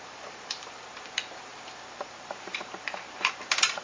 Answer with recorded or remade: remade